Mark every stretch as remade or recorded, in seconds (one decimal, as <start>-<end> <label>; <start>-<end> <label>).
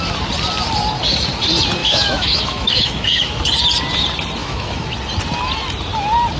0.0-1.8 recorded; 1.8-3.4 remade; 3.4-4.4 recorded; 4.4-4.9 remade; 4.9-6.4 recorded